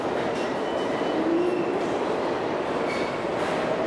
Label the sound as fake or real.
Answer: real